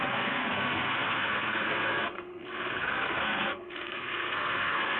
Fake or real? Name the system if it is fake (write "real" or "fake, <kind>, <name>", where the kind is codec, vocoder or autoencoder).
fake, codec, SNAC